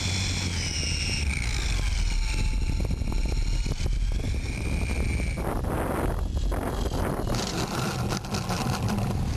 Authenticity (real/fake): real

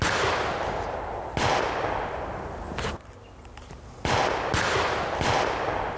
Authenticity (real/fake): real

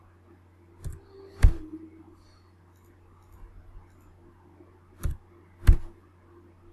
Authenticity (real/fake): real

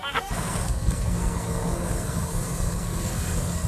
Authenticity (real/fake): fake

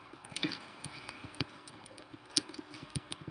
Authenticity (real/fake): fake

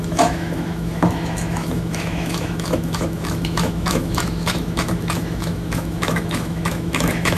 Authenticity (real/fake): fake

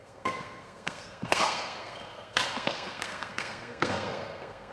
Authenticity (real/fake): fake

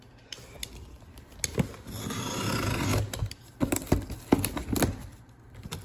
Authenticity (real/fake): real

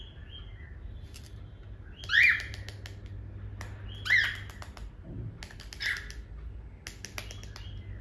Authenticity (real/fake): real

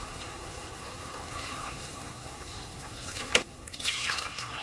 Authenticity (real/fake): fake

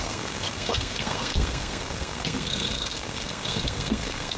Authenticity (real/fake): fake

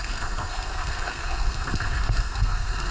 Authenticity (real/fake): fake